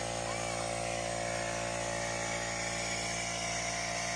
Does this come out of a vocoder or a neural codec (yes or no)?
no